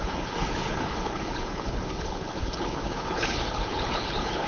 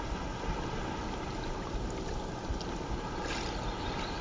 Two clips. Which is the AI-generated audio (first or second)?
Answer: first